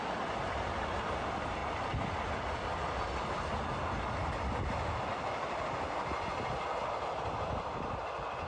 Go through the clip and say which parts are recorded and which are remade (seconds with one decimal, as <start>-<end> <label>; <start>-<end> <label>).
0.0-1.6 recorded; 1.6-2.3 remade; 2.3-8.5 recorded